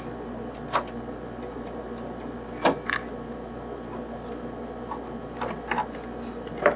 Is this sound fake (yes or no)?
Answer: no